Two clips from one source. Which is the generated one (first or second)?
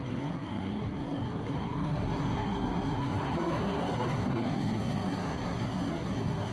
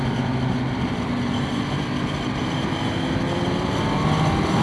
first